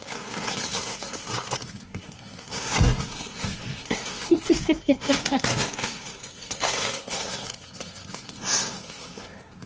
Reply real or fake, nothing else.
fake